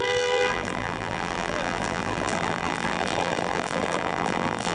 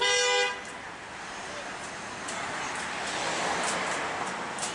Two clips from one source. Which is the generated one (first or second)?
first